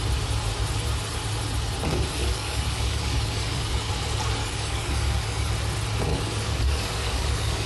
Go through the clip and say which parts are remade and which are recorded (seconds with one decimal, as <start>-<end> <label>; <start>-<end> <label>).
0.0-2.2 recorded; 2.2-3.9 remade; 3.9-4.4 recorded; 4.4-5.5 remade; 5.5-6.1 recorded; 6.1-7.7 remade